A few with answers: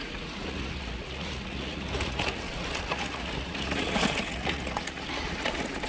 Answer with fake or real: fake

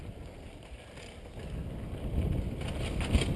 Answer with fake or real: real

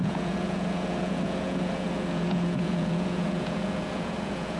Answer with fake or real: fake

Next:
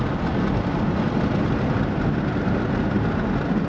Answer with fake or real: real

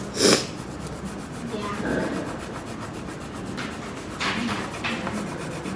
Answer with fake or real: real